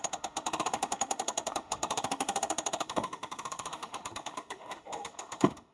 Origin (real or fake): fake